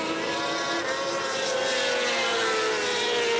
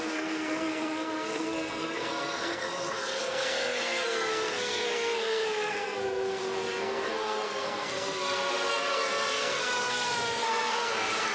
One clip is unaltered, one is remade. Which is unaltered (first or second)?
first